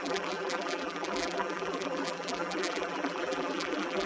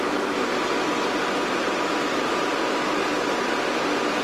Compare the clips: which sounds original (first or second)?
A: second